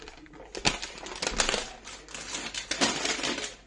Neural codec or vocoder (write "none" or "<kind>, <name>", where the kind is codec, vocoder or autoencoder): none